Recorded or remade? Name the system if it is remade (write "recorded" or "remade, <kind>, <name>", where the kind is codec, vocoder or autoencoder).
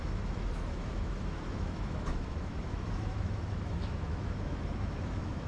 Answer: remade, autoencoder, DAC-VAE